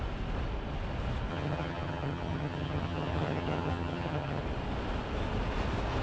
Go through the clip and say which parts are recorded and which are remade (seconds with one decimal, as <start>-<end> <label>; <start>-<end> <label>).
0.0-1.3 recorded; 1.3-4.4 remade; 4.4-6.0 recorded